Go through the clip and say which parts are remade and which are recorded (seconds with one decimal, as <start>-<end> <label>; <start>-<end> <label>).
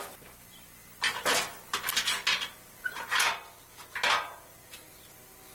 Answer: 0.0-5.5 recorded